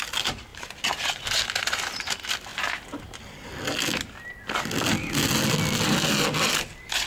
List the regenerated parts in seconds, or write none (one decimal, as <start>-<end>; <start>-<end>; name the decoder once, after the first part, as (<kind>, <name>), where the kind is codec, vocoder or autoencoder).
0.5-1.2 (vocoder, BigVGAN v2)